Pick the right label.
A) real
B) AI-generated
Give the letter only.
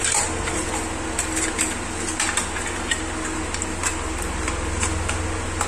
A